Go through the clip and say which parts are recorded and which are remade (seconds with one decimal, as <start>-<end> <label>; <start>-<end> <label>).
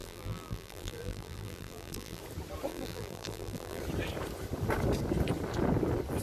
0.0-2.2 remade; 2.2-2.7 recorded; 2.7-3.8 remade; 3.8-6.2 recorded